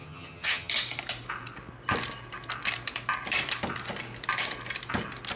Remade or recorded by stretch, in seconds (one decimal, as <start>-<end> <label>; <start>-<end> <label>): 0.0-0.7 remade; 0.7-5.4 recorded